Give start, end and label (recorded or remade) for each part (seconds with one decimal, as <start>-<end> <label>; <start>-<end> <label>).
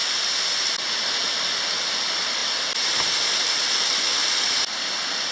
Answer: 0.0-5.3 recorded